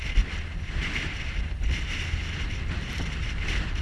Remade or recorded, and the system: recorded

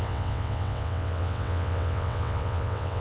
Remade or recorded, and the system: remade, vocoder, WaveNeXt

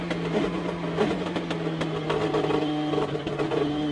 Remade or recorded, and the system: recorded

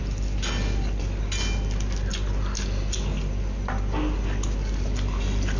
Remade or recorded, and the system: recorded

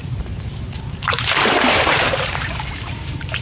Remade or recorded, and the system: remade, vocoder, BigVGAN v2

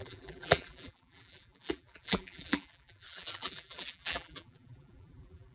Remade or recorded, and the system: remade, vocoder, BigVGAN v2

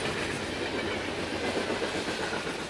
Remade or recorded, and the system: recorded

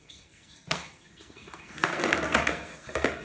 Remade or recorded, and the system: remade, codec, SNAC